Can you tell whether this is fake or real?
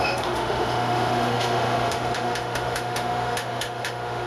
fake